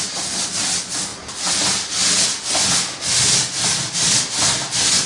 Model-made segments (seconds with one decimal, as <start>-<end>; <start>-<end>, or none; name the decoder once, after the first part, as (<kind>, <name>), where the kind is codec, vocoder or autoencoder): none

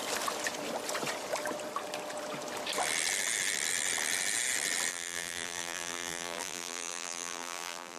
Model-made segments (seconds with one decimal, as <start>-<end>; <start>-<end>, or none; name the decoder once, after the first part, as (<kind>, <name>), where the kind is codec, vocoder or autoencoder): 4.9-8.0 (vocoder, BigVGAN v2)

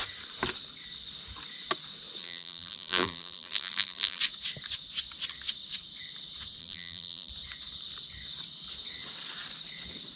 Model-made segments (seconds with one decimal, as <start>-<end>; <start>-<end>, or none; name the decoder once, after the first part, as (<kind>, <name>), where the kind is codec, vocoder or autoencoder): 2.2-4.2 (vocoder, BigVGAN v2); 6.6-7.3

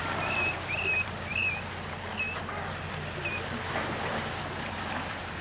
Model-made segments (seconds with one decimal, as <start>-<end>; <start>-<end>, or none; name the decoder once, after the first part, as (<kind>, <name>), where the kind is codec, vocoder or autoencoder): 0.0-1.4 (vocoder, BigVGAN v2); 4.6-5.4

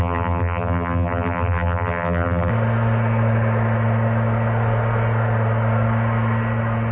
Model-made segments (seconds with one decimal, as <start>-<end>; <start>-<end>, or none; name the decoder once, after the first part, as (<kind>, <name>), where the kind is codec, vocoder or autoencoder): 0.0-2.5 (vocoder, BigVGAN v2)